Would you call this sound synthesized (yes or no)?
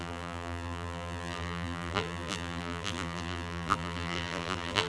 yes